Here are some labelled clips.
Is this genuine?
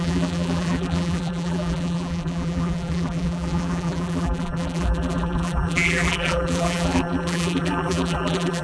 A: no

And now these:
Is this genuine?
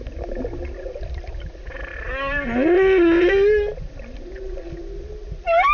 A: yes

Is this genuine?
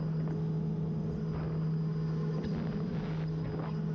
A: yes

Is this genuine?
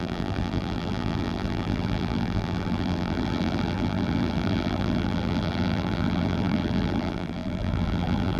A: no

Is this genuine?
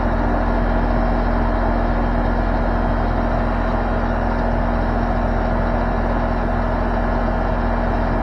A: yes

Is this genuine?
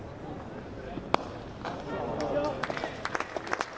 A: yes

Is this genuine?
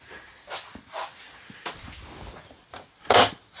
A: yes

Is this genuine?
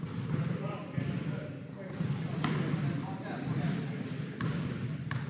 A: yes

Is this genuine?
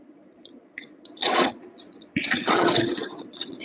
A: no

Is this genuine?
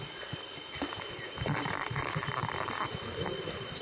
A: yes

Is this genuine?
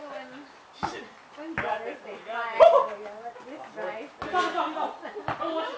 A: yes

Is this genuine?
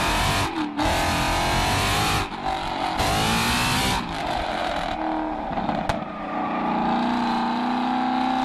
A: yes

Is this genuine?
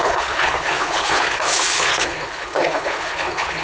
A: no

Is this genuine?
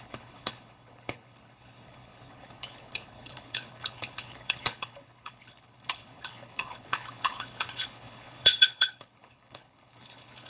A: no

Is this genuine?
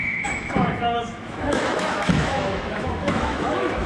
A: no